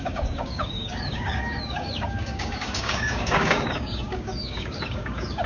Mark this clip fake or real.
fake